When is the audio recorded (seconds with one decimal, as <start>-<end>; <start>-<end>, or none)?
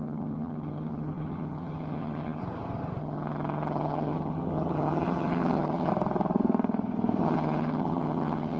2.4-3.0; 5.9-7.2